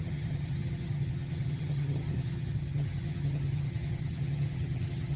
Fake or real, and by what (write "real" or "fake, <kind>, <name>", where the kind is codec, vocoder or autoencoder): fake, vocoder, HiFi-GAN